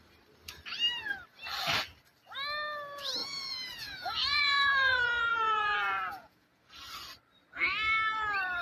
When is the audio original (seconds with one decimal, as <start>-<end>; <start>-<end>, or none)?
0.0-3.2; 6.7-8.6